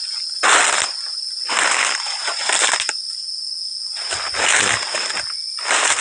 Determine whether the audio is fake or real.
real